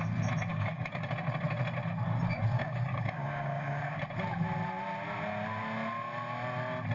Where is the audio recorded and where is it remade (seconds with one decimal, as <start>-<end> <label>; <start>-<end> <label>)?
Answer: 0.0-0.5 recorded; 0.5-1.1 remade; 1.1-2.5 recorded; 2.5-4.0 remade; 4.0-6.9 recorded